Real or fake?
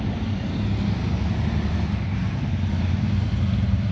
real